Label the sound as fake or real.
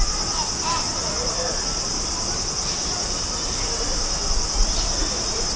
real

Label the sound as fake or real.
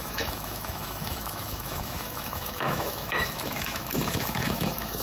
fake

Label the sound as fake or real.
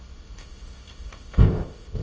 fake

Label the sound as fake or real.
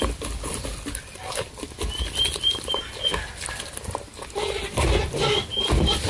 real